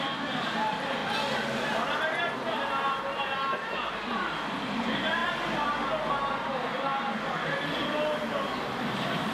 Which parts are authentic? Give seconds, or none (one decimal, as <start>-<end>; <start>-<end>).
5.2-6.3; 6.9-8.9